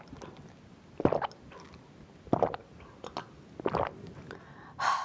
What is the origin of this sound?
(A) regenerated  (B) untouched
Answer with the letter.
B